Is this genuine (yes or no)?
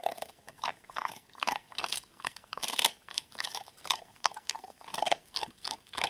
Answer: no